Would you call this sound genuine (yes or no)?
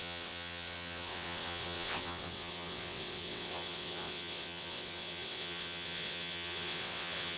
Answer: no